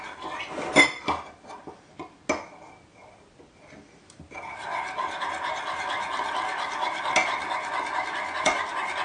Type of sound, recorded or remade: recorded